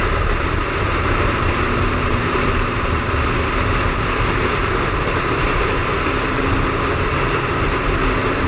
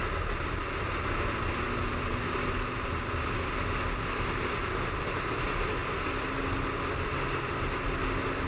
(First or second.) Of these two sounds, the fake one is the first